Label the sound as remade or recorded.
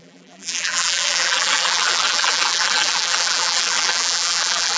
remade